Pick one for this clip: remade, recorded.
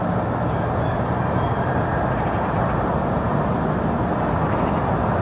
recorded